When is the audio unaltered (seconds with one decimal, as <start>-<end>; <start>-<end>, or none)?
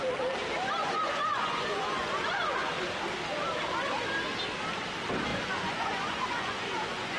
0.0-0.8; 2.8-5.3